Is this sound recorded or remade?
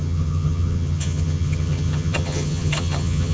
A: remade